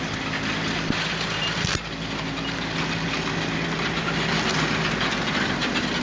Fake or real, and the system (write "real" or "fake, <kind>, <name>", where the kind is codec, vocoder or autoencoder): real